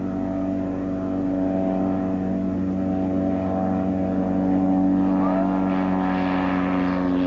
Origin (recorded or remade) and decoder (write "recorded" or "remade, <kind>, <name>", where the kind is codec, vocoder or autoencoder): recorded